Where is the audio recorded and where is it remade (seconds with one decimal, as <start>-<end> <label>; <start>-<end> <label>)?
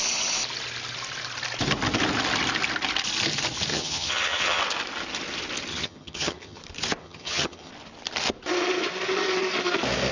0.0-3.7 recorded; 3.7-4.6 remade; 4.6-5.7 recorded; 5.7-6.6 remade; 6.6-7.0 recorded; 7.0-7.7 remade; 7.7-10.1 recorded